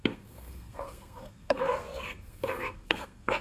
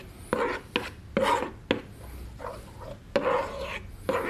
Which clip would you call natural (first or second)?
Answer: second